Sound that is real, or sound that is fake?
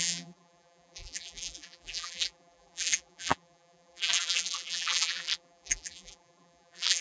fake